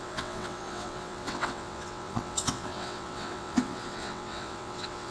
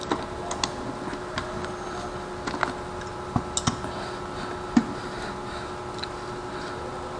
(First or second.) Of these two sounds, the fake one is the first